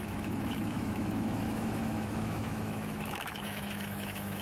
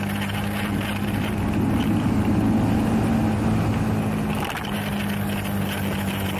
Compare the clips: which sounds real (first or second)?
second